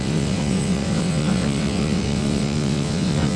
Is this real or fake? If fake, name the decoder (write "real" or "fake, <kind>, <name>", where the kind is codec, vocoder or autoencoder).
fake, vocoder, WaveNeXt